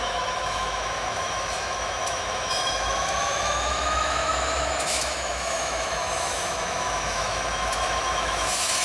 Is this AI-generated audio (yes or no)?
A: yes